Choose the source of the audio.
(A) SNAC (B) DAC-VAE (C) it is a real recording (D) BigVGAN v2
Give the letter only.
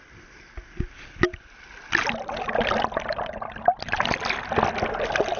C